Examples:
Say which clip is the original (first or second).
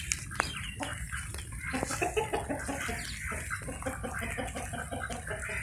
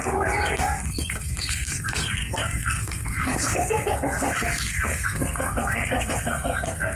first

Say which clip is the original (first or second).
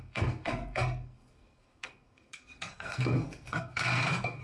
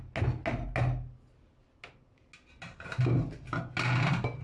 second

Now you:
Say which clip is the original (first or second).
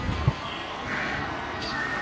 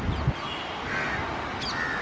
second